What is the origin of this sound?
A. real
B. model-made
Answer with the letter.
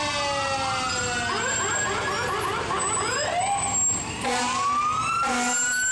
A